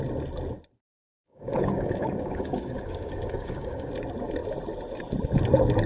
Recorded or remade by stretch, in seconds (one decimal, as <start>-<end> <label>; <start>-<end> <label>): 0.0-1.1 recorded; 1.1-3.9 remade; 3.9-5.9 recorded